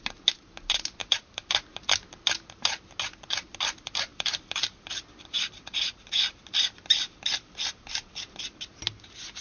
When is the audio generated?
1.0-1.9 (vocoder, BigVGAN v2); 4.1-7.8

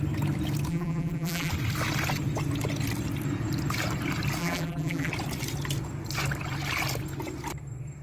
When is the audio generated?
0.7-1.5 (vocoder, BigVGAN v2); 4.4-5.1

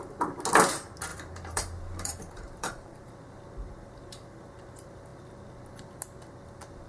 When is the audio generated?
1.1-3.1 (vocoder, BigVGAN v2)

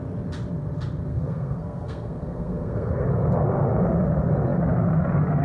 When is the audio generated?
1.1-2.9 (codec, SNAC)

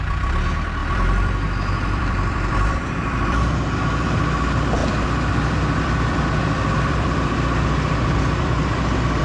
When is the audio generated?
0.8-3.4 (vocoder, BigVGAN v2); 4.8-9.2

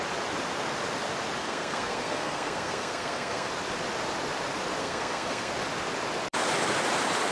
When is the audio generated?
1.4-3.5 (codec, SNAC); 4.8-5.5